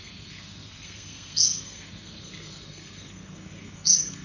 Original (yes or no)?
no